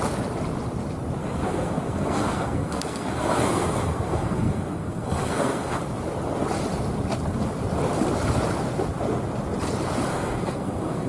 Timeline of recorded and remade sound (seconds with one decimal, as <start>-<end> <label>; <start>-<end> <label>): 0.0-1.2 recorded; 1.2-5.8 remade; 5.8-10.1 recorded; 10.1-11.1 remade